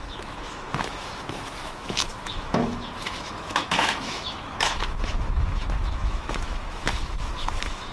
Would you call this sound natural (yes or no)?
no